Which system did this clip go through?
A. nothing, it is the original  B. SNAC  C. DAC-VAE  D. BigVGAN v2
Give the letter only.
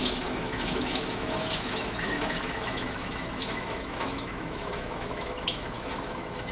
C